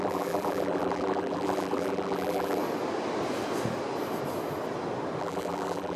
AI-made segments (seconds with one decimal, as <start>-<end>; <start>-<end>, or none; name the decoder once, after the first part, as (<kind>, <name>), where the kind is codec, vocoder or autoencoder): 0.0-2.6 (vocoder, BigVGAN v2); 5.2-6.0